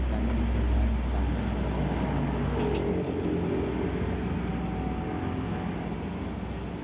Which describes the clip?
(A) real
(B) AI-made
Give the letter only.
A